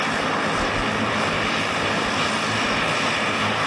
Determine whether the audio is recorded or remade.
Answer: recorded